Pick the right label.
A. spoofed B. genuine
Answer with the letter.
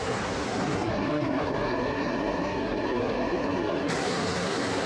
A